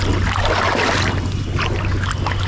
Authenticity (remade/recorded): recorded